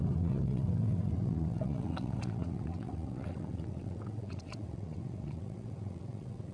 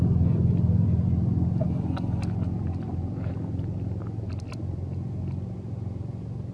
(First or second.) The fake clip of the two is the first